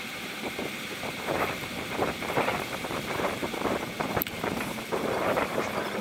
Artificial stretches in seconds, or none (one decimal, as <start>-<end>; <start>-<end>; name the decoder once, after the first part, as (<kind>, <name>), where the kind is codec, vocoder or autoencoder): 0.0-6.0 (vocoder, BigVGAN v2)